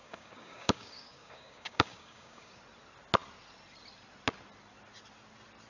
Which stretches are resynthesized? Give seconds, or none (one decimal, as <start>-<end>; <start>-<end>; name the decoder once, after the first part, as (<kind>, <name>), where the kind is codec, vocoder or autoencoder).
0.0-2.6 (codec, DAC)